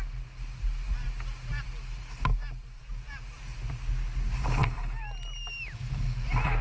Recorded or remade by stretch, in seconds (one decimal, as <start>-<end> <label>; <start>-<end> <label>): 0.0-6.6 recorded